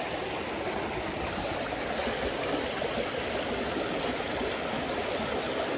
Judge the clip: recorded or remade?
recorded